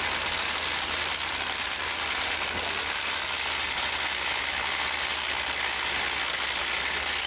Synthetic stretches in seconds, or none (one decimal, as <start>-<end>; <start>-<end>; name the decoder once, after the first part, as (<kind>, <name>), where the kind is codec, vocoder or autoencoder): none